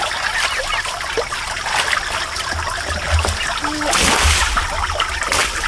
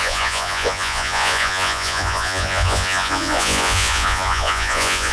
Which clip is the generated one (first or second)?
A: second